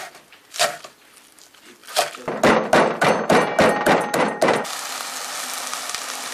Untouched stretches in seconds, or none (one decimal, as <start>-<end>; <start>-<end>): 0.0-6.3